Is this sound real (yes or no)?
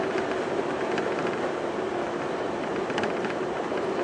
yes